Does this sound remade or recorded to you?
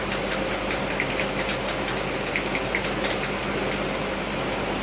recorded